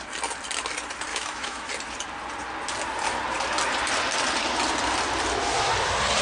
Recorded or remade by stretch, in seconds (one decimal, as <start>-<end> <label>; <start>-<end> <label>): 0.0-1.1 recorded; 1.1-1.7 remade; 1.7-6.2 recorded